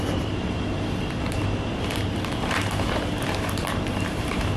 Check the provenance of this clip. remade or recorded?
remade